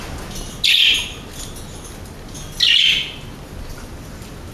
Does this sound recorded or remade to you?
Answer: recorded